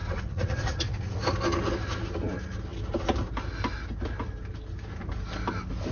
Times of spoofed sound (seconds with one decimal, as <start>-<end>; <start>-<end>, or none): 0.0-1.2